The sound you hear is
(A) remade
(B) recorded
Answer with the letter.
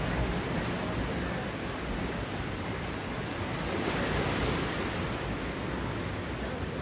B